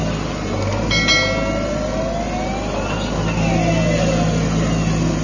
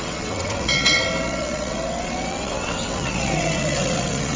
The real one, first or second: first